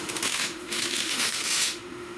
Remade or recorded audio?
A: remade